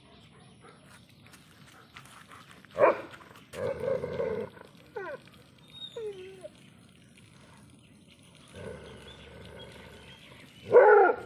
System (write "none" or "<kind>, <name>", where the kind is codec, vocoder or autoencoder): none